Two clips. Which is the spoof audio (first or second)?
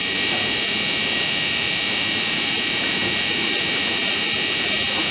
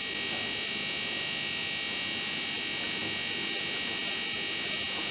first